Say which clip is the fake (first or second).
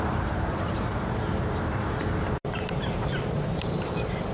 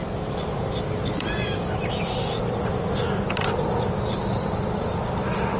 first